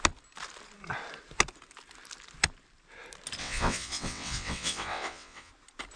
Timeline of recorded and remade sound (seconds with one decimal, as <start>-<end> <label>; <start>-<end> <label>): 0.0-3.4 recorded; 3.4-5.5 remade; 5.5-6.0 recorded